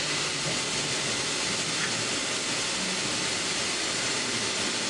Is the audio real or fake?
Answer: real